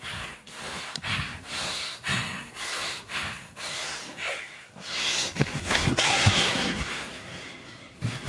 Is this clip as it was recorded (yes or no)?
no